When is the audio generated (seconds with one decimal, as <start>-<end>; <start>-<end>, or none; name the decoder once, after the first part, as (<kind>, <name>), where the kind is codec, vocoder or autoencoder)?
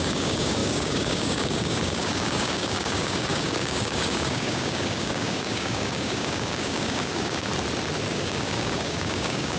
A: 0.0-7.5 (codec, DAC); 8.1-9.6